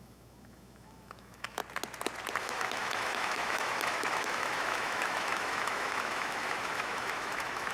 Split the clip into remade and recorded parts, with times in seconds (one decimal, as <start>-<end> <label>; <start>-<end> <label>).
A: 0.0-1.6 remade; 1.6-2.4 recorded; 2.4-7.7 remade